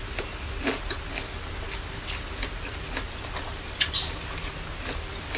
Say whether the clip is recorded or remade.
recorded